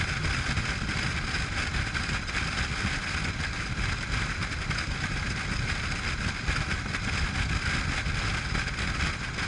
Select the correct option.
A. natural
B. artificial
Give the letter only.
A